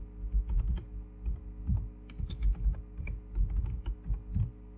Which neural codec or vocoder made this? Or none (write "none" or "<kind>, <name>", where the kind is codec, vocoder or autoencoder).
none